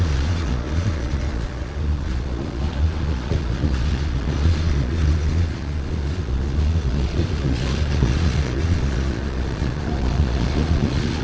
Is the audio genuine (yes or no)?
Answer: no